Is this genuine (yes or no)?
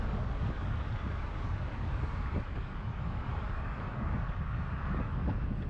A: no